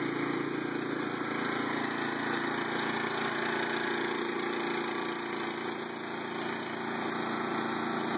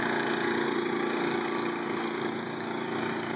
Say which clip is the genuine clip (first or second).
first